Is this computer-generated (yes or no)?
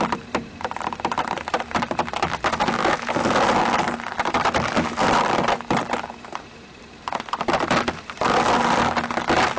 no